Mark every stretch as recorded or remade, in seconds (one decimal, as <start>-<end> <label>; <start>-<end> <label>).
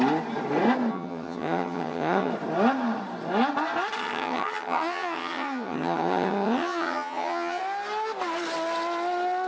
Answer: 0.0-0.9 recorded; 0.9-2.3 remade; 2.3-4.0 recorded; 4.0-7.6 remade; 7.6-9.5 recorded